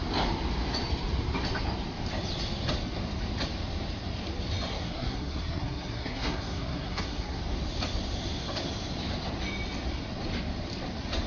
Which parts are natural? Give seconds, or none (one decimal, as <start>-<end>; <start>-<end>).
0.0-4.7; 7.4-11.3